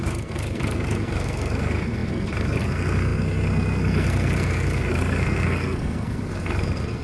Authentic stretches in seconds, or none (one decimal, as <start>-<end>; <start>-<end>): none